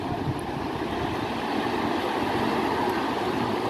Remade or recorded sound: recorded